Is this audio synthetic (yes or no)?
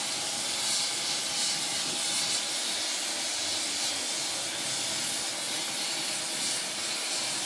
no